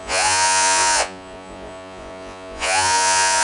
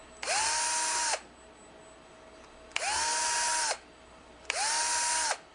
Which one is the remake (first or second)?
first